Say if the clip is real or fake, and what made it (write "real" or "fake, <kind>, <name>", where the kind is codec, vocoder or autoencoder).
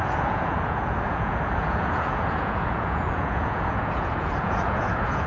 fake, vocoder, Vocos